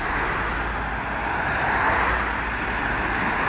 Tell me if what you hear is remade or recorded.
recorded